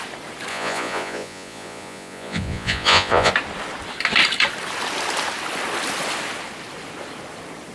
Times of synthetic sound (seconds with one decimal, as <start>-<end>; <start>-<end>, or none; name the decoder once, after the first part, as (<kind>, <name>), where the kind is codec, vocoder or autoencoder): 0.5-3.3 (vocoder, Vocos)